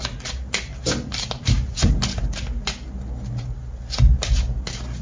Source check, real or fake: real